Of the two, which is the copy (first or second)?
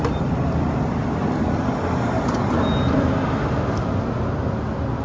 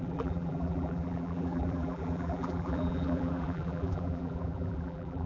second